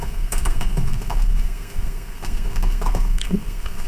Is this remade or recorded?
remade